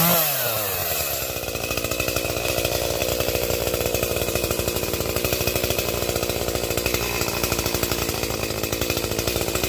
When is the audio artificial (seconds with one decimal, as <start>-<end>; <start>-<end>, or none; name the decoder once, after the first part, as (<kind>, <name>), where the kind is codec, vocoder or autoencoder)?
3.0-5.9 (vocoder, BigVGAN v2)